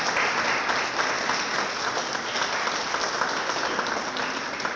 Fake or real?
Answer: real